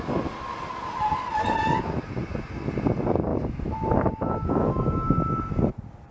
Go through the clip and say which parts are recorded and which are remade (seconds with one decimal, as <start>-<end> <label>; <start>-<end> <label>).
0.0-3.3 recorded; 3.3-4.7 remade; 4.7-6.1 recorded